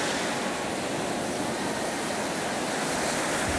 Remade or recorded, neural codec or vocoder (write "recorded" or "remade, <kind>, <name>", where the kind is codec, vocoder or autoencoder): recorded